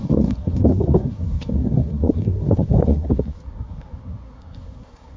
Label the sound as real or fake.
fake